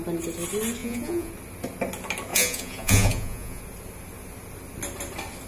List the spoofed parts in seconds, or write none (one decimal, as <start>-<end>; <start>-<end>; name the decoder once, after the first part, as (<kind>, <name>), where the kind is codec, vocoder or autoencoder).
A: 0.8-1.3 (vocoder, Vocos); 2.3-3.6